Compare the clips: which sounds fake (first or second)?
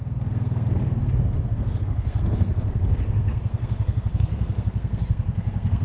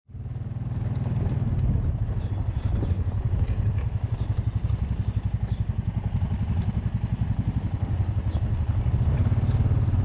first